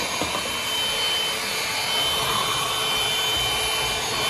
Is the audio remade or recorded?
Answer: recorded